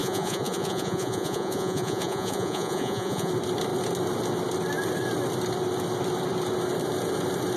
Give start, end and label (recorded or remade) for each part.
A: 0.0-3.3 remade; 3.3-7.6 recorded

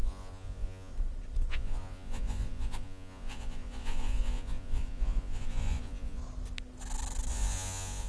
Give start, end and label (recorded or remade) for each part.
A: 0.0-0.9 remade; 0.9-1.5 recorded; 1.5-6.2 remade; 6.2-7.3 recorded; 7.3-8.1 remade